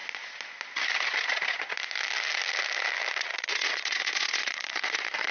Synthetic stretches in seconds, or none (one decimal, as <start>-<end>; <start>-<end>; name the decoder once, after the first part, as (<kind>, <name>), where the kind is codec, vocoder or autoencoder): 3.2-5.3 (vocoder, Vocos)